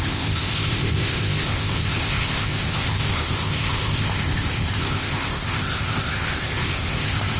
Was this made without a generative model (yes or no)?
no